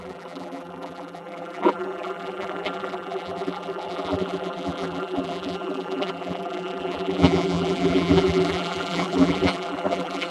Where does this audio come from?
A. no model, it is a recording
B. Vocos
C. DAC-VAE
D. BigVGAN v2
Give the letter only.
D